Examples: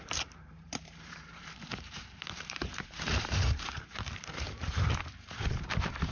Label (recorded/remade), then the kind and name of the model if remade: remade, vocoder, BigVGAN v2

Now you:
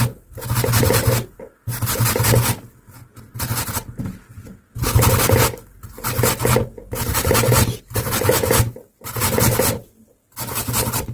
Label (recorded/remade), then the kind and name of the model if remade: recorded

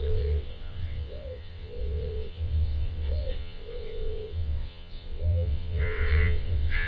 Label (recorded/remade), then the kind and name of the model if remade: remade, vocoder, WaveNeXt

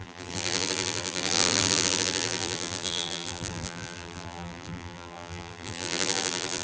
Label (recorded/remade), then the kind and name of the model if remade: remade, vocoder, BigVGAN v2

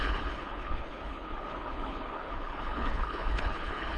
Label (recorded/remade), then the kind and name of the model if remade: remade, codec, HILCodec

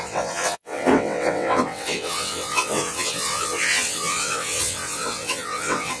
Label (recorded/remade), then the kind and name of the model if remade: remade, vocoder, WaveNeXt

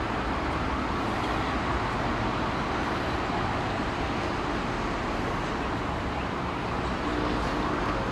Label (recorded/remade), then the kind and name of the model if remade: recorded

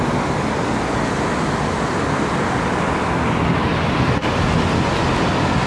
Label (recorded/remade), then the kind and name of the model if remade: recorded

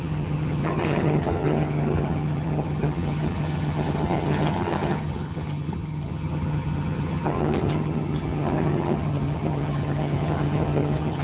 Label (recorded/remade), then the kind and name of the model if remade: remade, vocoder, HiFi-GAN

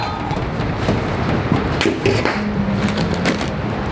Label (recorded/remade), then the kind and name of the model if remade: recorded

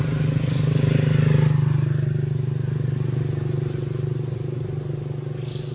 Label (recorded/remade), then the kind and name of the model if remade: recorded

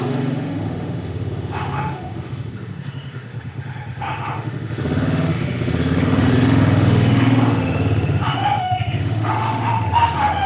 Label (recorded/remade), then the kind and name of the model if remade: remade, autoencoder, DAC-VAE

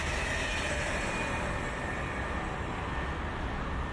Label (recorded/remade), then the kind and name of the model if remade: recorded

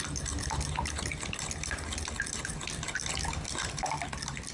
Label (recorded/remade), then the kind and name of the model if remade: recorded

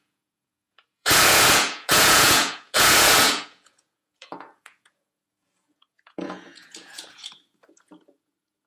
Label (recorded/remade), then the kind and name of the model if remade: remade, vocoder, Vocos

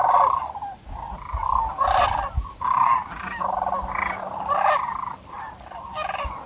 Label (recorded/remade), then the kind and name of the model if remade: recorded